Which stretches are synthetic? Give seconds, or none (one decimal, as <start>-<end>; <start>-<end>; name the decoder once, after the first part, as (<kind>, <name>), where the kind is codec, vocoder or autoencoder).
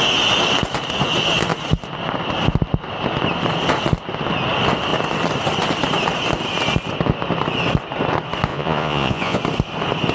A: 8.5-9.4 (vocoder, Vocos)